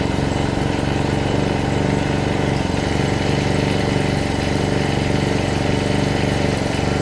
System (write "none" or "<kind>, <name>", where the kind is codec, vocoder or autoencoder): vocoder, BigVGAN v2